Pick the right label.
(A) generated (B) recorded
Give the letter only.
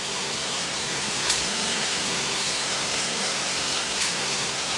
A